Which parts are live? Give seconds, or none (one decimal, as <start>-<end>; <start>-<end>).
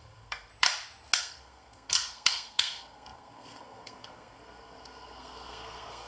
0.5-1.2